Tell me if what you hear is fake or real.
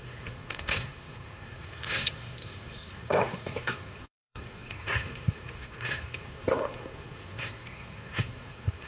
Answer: fake